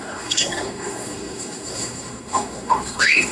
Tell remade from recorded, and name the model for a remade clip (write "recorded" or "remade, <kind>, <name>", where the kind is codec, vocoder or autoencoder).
remade, codec, SNAC